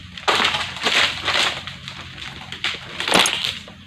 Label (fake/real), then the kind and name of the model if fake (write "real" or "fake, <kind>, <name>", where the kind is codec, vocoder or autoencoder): real